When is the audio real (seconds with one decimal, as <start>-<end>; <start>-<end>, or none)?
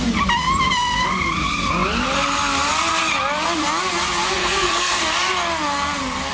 0.0-4.4; 5.0-6.3